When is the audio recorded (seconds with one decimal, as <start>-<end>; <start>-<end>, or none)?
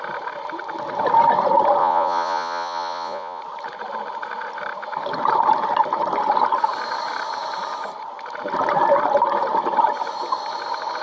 0.0-1.8; 3.4-11.0